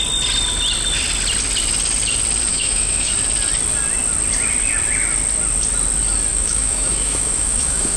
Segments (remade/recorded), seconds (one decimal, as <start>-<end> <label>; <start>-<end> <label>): 0.0-2.5 recorded; 2.5-3.1 remade; 3.1-6.3 recorded; 6.3-8.0 remade